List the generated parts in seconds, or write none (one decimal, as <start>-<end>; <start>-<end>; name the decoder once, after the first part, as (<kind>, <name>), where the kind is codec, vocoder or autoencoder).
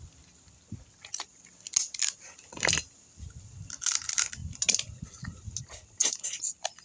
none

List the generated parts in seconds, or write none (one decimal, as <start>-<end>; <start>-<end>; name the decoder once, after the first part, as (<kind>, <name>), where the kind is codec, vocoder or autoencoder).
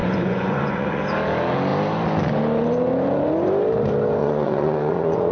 0.0-1.0 (vocoder, Vocos); 4.2-5.3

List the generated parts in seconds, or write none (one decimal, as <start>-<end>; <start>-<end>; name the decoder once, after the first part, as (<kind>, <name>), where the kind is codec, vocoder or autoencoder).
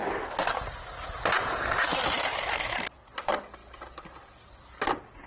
none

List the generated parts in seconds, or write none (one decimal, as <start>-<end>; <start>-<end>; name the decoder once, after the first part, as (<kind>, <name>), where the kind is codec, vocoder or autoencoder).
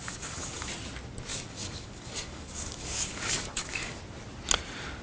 0.0-0.7 (codec, DAC); 1.3-4.0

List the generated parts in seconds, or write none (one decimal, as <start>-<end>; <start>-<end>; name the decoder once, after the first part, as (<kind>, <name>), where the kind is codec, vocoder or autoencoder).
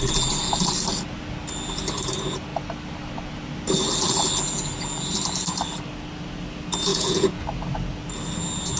6.9-7.4 (vocoder, Vocos)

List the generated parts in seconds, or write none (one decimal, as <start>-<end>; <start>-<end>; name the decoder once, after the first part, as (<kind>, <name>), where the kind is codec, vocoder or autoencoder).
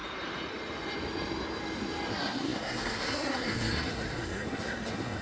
2.1-5.2 (codec, SNAC)